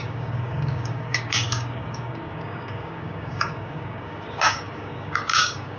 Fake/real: fake